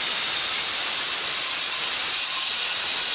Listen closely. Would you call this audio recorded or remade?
recorded